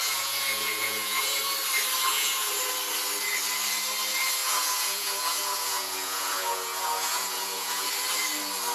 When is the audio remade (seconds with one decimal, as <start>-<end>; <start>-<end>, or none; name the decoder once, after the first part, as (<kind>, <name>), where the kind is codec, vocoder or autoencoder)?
0.0-1.4 (vocoder, Vocos); 2.1-2.6; 4.4-7.9